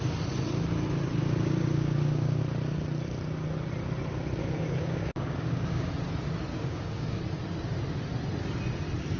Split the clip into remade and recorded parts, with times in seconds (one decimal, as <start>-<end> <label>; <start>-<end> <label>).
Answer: 0.0-1.2 recorded; 1.2-2.4 remade; 2.4-4.4 recorded; 4.4-5.9 remade; 5.9-6.5 recorded; 6.5-7.2 remade; 7.2-9.2 recorded